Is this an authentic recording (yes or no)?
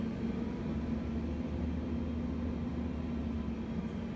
yes